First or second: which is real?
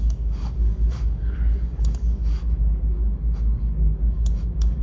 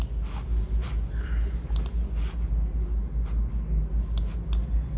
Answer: second